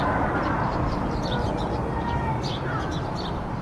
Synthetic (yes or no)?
yes